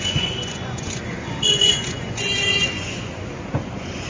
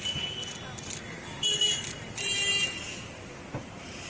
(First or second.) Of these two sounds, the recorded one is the second